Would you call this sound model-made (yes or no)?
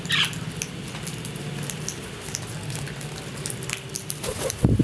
no